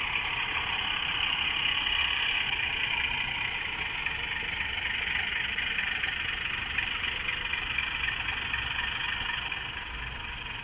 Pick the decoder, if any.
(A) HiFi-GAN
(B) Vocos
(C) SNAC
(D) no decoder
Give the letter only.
D